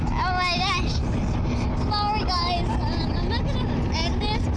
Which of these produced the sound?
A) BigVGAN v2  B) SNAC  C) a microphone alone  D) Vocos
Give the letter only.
C